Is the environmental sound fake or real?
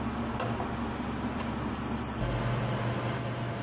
real